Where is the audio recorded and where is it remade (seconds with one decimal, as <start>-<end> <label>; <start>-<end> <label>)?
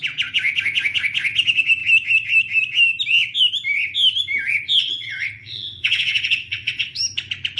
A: 0.0-4.8 recorded; 4.8-7.0 remade; 7.0-7.6 recorded